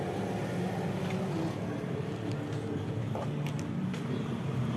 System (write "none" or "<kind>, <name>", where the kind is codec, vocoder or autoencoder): none